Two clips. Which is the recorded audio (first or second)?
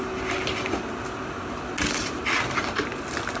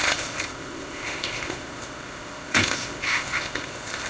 first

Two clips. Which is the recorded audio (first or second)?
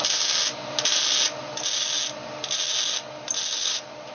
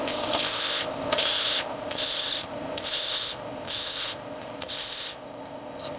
first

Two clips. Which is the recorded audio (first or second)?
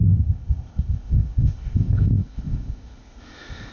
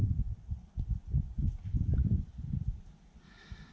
second